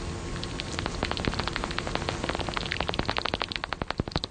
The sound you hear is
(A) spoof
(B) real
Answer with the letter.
B